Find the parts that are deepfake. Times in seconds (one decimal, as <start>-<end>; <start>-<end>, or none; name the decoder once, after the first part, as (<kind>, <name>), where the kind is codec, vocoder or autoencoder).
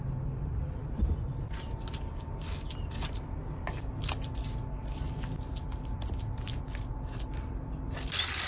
none